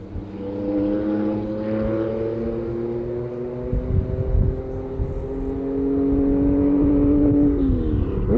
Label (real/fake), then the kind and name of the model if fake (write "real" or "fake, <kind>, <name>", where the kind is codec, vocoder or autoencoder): real